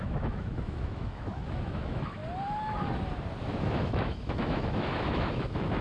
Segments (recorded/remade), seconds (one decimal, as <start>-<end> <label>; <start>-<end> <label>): 0.0-2.2 remade; 2.2-3.4 recorded; 3.4-5.8 remade